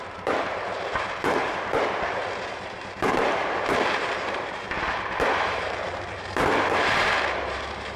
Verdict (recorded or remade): remade